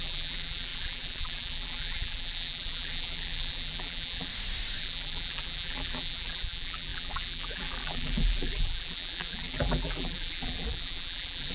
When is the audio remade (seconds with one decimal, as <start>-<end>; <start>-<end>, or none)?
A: 0.0-4.3; 4.8-11.5